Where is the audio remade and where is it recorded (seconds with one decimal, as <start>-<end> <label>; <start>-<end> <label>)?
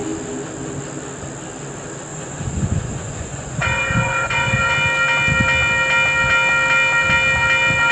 0.0-2.1 recorded; 2.1-4.7 remade; 4.7-7.9 recorded